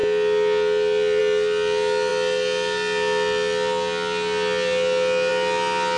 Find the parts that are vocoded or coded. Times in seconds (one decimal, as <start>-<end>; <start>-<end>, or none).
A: none